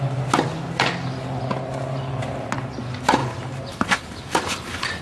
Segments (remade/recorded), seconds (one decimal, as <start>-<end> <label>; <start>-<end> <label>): 0.0-3.2 recorded; 3.2-5.0 remade

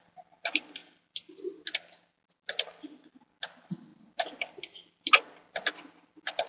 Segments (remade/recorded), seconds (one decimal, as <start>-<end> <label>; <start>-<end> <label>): 0.0-6.5 recorded

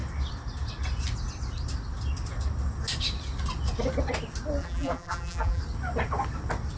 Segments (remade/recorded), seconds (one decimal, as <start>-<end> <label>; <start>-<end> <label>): 0.0-4.6 recorded; 4.6-5.6 remade; 5.6-6.8 recorded

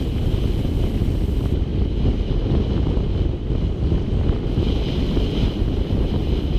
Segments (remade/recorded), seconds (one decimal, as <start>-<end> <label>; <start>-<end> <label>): 0.0-6.6 recorded

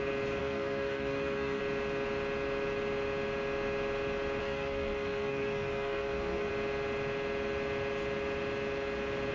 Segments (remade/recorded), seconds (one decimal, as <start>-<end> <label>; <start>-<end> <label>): 0.0-0.4 recorded; 0.4-1.6 remade; 1.6-4.4 recorded; 4.4-6.5 remade; 6.5-9.3 recorded

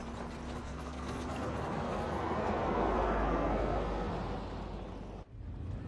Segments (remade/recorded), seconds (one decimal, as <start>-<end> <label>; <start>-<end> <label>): 0.0-0.6 recorded; 0.6-4.1 remade; 4.1-5.9 recorded